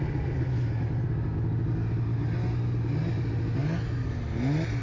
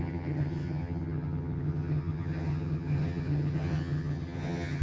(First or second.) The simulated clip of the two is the second